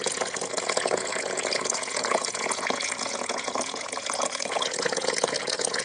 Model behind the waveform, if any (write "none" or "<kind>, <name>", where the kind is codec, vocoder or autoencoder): vocoder, Vocos